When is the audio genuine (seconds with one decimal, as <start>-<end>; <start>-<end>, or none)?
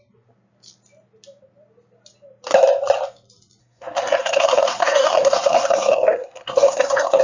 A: 0.0-3.6